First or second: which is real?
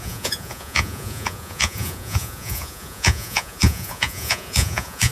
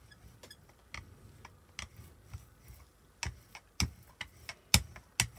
second